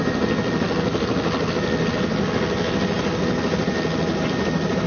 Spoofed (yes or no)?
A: no